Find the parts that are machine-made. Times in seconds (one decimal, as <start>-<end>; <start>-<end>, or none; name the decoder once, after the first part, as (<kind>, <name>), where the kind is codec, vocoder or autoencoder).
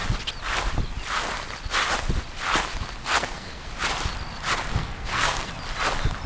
3.0-3.7 (codec, SNAC); 4.7-5.5